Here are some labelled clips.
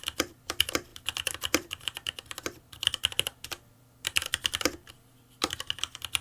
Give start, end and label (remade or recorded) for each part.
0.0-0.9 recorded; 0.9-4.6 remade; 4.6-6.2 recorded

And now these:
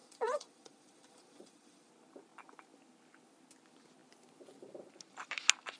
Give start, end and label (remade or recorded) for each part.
0.0-1.9 remade; 1.9-5.8 recorded

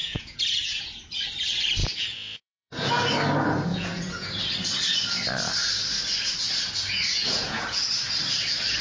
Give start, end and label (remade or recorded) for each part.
0.0-0.9 remade; 0.9-1.8 recorded; 1.8-3.0 remade; 3.0-3.7 recorded; 3.7-4.4 remade; 4.4-7.0 recorded; 7.0-7.9 remade; 7.9-8.8 recorded

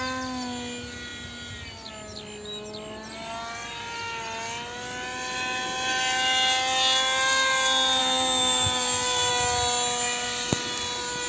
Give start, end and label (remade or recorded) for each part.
0.0-8.0 recorded; 8.0-9.3 remade; 9.3-11.3 recorded